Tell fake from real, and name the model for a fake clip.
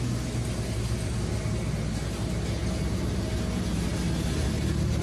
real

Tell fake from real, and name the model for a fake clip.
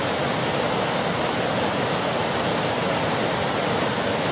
real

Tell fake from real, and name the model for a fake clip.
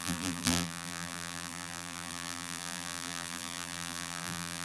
fake, vocoder, BigVGAN v2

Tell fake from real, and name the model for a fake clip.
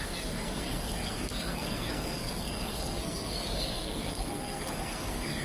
fake, codec, SNAC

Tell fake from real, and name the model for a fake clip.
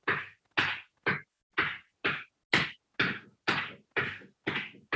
real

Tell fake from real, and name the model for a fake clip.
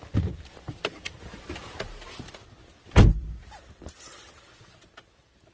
real